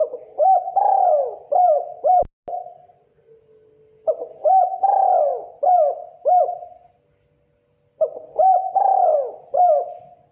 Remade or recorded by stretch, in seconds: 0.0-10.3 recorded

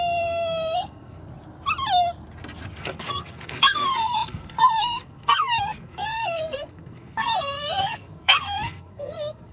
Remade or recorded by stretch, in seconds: 0.0-1.2 remade; 1.2-2.7 recorded; 2.7-9.5 remade

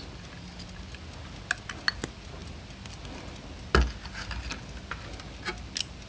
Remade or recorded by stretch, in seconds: 0.0-6.1 recorded

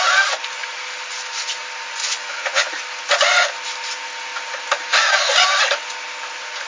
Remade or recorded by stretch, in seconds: 0.0-2.0 recorded; 2.0-2.7 remade; 2.7-6.7 recorded

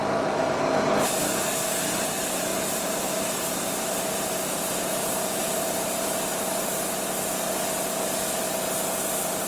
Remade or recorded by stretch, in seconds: 0.0-0.9 remade; 0.9-2.5 recorded; 2.5-6.8 remade; 6.8-9.5 recorded

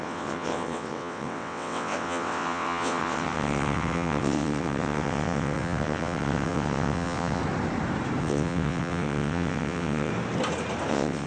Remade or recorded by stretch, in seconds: 0.0-7.4 remade; 7.4-8.2 recorded; 8.2-10.1 remade; 10.1-10.9 recorded; 10.9-11.3 remade

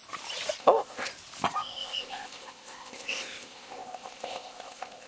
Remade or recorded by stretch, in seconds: 0.0-0.6 recorded; 0.6-1.1 remade; 1.1-1.6 recorded; 1.6-5.1 remade